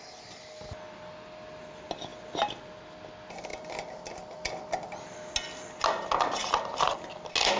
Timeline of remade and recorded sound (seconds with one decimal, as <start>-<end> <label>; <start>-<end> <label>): 0.0-7.6 recorded